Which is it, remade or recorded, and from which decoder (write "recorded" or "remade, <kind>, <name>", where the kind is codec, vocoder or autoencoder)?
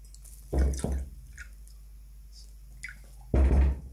recorded